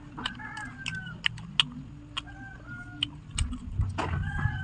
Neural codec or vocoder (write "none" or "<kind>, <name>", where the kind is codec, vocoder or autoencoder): none